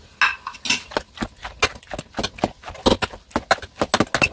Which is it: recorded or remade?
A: recorded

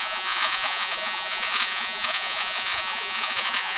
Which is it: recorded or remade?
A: remade